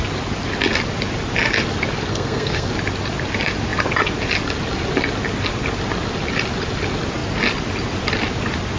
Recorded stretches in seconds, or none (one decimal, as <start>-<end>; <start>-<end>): 0.0-2.1; 2.7-8.8